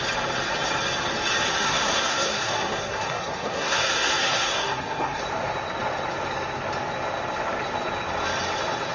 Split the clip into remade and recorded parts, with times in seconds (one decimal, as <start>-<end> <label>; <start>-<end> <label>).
0.0-1.6 recorded; 1.6-5.2 remade; 5.2-8.9 recorded